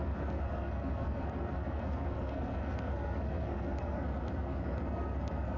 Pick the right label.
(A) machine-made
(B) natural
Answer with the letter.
A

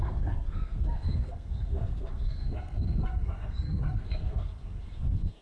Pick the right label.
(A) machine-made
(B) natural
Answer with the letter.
A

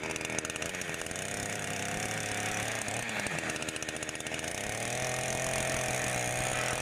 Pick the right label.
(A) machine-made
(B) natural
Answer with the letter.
B